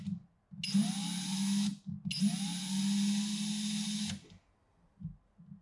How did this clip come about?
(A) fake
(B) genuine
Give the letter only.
B